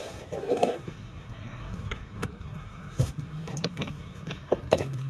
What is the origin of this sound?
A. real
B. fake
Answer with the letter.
B